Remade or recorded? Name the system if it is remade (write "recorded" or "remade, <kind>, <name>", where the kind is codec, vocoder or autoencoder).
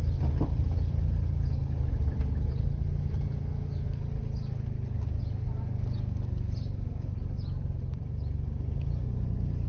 recorded